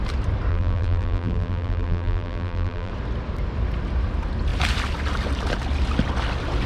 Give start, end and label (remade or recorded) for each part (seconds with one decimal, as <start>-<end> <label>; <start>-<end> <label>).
0.0-0.5 recorded; 0.5-2.9 remade; 2.9-6.7 recorded